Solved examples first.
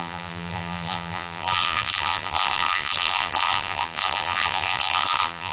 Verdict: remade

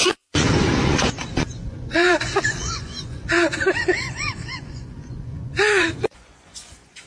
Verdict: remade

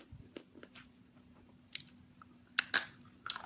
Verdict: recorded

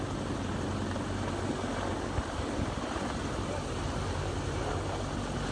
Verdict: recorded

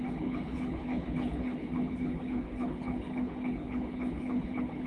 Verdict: remade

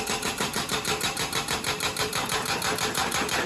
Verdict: remade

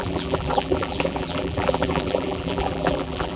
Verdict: remade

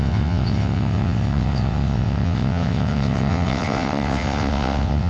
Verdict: remade